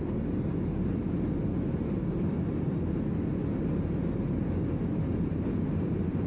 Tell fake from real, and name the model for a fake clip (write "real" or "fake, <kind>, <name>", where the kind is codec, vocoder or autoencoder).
real